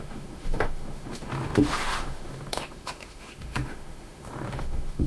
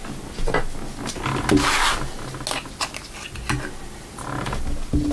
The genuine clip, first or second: second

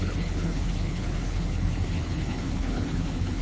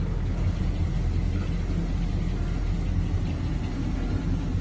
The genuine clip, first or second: second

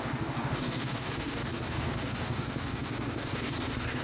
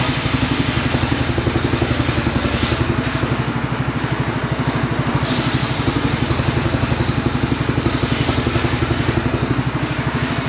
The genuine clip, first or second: second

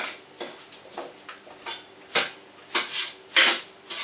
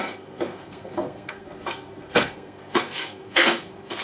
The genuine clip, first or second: first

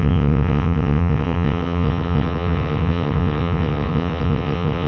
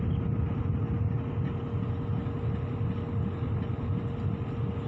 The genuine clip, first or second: second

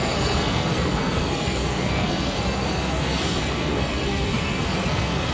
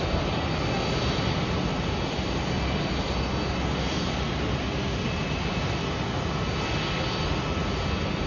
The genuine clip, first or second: second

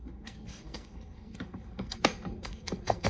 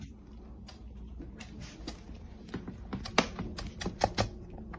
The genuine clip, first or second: second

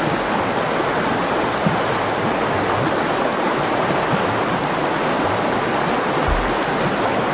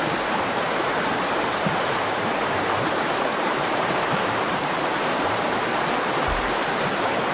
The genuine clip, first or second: first